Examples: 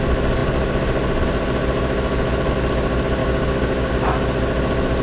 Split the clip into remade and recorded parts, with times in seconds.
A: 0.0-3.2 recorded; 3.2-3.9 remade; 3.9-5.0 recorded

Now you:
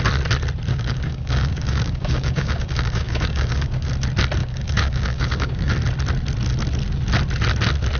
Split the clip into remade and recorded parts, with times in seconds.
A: 0.0-0.7 recorded; 0.7-3.9 remade; 3.9-4.4 recorded; 4.4-5.7 remade; 5.7-8.0 recorded

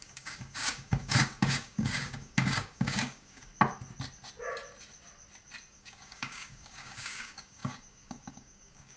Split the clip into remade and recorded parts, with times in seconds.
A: 0.0-3.5 remade; 3.5-5.7 recorded; 5.7-9.0 remade

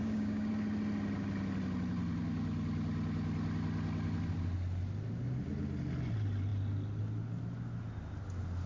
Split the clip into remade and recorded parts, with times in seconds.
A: 0.0-0.5 remade; 0.5-8.7 recorded